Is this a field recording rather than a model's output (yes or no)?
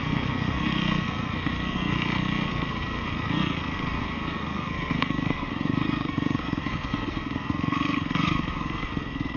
no